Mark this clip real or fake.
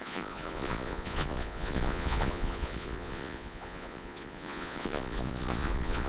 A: fake